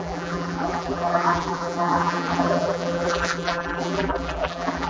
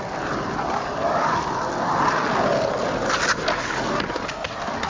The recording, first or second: second